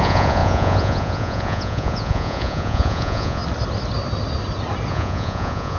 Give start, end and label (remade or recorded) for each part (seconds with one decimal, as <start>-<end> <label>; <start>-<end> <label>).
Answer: 0.0-3.4 remade; 3.4-4.9 recorded; 4.9-5.8 remade